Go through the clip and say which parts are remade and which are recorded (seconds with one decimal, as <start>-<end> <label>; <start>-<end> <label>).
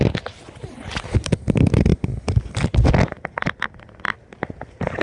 0.0-5.0 recorded